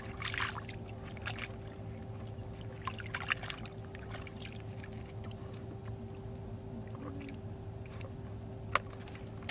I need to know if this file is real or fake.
real